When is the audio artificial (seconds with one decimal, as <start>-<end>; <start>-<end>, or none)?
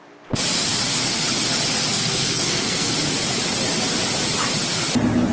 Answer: 1.9-2.9